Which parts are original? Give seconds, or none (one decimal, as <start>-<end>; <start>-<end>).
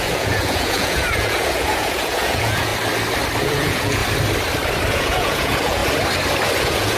2.7-3.4; 4.0-4.9; 5.8-6.6